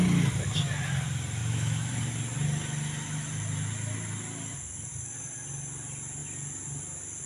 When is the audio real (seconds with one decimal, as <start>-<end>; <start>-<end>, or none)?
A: 0.0-1.4; 1.9-7.3